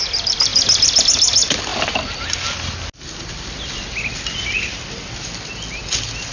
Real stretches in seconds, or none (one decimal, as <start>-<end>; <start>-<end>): 0.0-6.3